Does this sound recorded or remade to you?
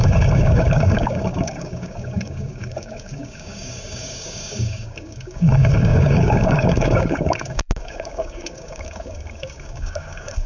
remade